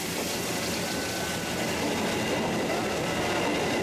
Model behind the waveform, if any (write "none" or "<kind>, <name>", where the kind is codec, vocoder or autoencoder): none